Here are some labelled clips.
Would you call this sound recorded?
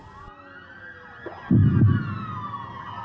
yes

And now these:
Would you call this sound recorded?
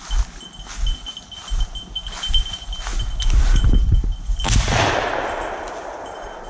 yes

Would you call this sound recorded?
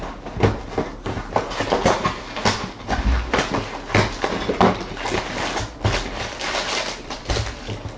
yes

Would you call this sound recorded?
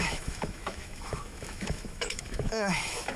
no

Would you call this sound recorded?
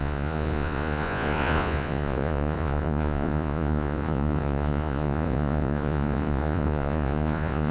no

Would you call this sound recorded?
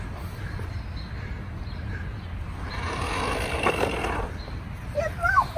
yes